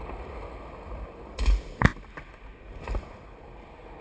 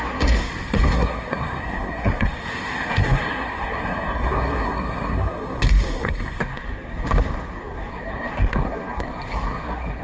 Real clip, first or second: first